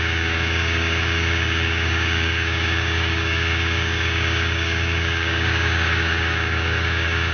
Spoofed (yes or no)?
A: yes